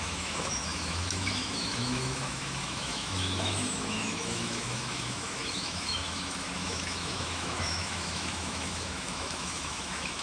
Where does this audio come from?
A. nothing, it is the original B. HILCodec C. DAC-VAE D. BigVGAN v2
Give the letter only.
C